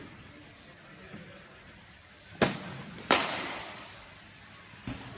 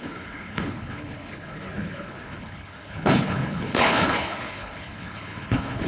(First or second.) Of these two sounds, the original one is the first